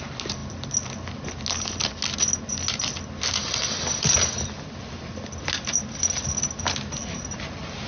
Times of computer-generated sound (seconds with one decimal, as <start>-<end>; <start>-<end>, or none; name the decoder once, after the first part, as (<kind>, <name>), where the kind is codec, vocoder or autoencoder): none